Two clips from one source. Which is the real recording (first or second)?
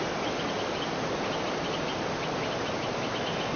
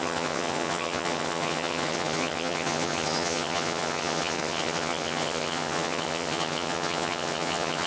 first